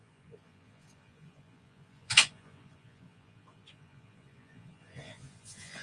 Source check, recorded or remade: remade